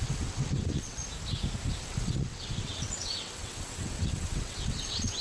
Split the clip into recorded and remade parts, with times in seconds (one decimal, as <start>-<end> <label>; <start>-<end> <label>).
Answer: 0.0-1.0 remade; 1.0-1.8 recorded; 1.8-5.2 remade